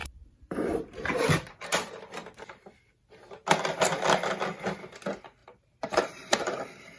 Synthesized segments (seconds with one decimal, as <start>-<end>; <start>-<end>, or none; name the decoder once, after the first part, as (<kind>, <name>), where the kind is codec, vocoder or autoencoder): 0.0-2.1 (vocoder, BigVGAN v2); 5.4-6.3